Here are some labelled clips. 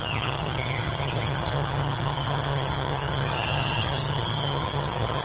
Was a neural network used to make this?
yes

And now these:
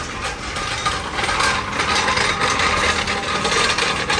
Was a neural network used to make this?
no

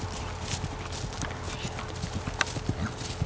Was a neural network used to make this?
no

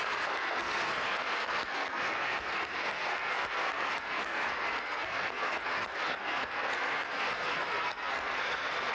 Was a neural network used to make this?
yes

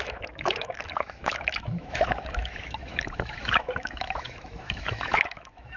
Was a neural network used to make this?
yes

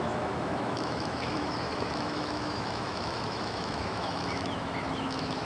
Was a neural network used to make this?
yes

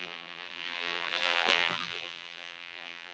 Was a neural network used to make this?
yes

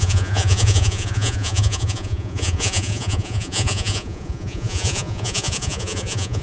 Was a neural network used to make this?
yes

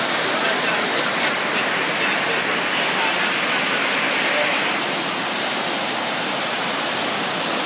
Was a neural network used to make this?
no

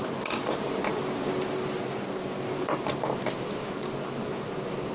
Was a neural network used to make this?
no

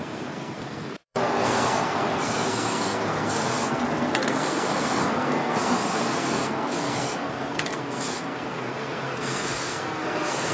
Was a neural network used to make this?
yes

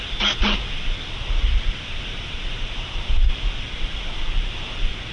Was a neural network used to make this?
no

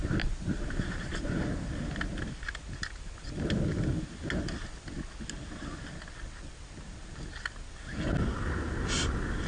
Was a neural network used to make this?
no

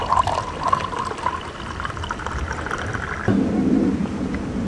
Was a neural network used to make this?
no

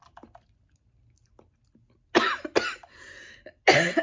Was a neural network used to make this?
no